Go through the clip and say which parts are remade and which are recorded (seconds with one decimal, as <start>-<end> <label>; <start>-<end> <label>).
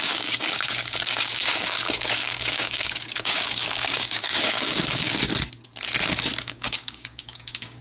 0.0-5.3 remade; 5.3-6.4 recorded; 6.4-7.8 remade